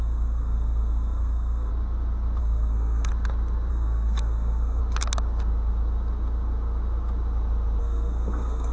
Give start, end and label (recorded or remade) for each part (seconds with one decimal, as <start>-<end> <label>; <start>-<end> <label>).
0.0-1.7 remade; 1.7-2.4 recorded; 2.4-3.1 remade; 3.1-3.7 recorded; 3.7-4.8 remade; 4.8-7.8 recorded; 7.8-8.7 remade